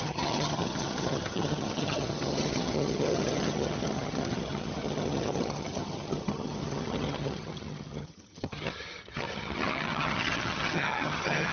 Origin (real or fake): fake